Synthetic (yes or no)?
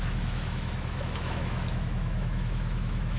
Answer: yes